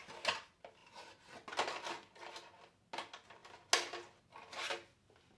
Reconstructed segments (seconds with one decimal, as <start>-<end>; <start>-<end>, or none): none